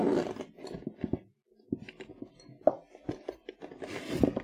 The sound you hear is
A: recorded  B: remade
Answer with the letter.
A